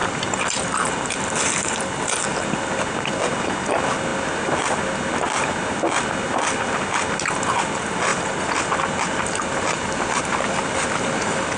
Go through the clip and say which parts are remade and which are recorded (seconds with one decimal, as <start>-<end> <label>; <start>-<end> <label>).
0.0-2.8 remade; 2.8-8.1 recorded; 8.1-11.6 remade

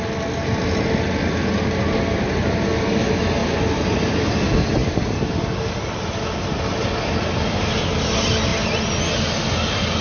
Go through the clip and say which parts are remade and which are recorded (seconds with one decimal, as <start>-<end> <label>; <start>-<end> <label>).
0.0-3.4 recorded; 3.4-4.1 remade; 4.1-10.0 recorded

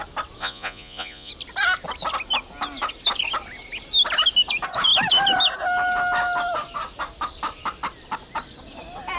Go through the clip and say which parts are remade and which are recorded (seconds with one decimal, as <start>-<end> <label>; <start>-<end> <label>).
0.0-0.4 recorded; 0.4-1.3 remade; 1.3-9.2 recorded